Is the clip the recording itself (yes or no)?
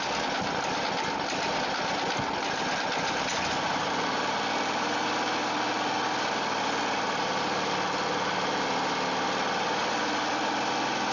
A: yes